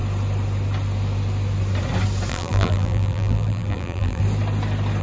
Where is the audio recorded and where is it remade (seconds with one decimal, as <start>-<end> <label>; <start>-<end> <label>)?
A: 0.0-2.3 recorded; 2.3-4.2 remade; 4.2-5.0 recorded